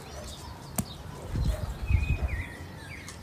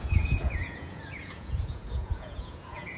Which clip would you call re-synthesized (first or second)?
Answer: second